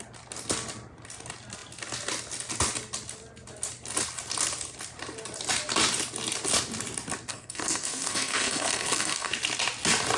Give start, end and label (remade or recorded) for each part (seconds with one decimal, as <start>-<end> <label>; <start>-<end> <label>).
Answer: 0.0-7.3 recorded; 7.3-9.3 remade; 9.3-10.2 recorded